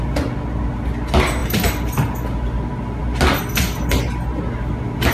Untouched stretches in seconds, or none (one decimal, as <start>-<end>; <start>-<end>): 0.0-5.1